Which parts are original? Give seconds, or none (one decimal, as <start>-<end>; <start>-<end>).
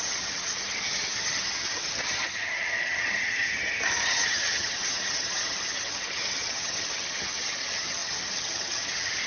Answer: none